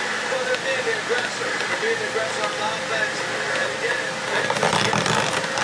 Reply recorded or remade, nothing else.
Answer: recorded